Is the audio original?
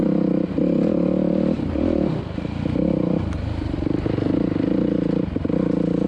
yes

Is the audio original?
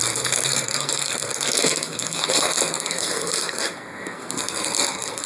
no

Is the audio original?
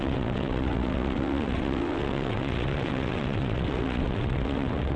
no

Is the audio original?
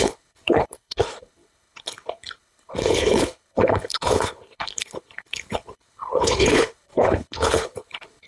no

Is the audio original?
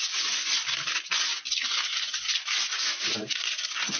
yes